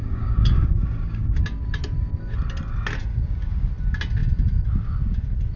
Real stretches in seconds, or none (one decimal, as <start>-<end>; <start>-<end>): 1.4-3.1; 3.7-5.6